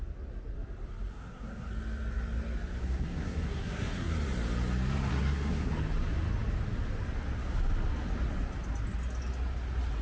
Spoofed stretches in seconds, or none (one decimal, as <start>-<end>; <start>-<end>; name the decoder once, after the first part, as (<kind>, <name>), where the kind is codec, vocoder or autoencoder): 1.1-1.7 (codec, SNAC); 2.8-4.1; 5.1-5.7